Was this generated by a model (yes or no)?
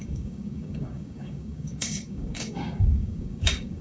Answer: yes